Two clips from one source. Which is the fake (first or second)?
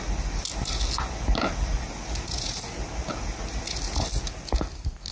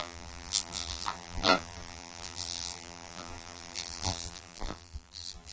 second